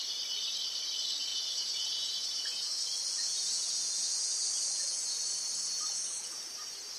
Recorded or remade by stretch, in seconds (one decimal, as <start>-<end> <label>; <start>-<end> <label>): 0.0-1.3 recorded; 1.3-2.8 remade; 2.8-3.2 recorded; 3.2-6.4 remade; 6.4-7.0 recorded

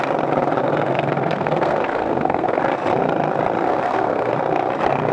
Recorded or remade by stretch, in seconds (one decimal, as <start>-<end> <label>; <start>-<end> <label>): 0.0-0.6 recorded; 0.6-2.6 remade; 2.6-3.7 recorded; 3.7-4.3 remade; 4.3-5.1 recorded

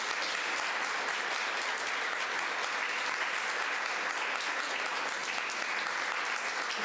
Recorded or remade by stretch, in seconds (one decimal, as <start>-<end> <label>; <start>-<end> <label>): 0.0-6.8 recorded

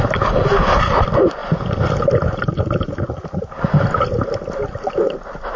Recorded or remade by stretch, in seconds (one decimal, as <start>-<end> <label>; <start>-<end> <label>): 0.0-5.6 recorded

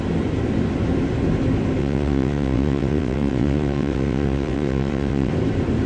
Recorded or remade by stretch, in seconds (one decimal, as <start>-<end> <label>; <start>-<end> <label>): 0.0-1.8 recorded; 1.8-5.3 remade; 5.3-5.9 recorded

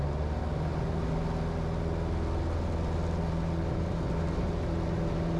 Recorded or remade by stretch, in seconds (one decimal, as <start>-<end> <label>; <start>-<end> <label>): 0.0-5.4 recorded